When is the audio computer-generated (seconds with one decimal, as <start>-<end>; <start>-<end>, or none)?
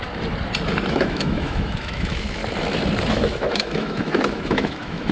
0.9-2.4; 3.1-5.1